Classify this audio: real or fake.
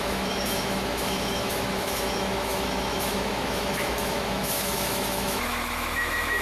fake